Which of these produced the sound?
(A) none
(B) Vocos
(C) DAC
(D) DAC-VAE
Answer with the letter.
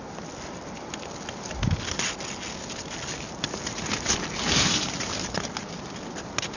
A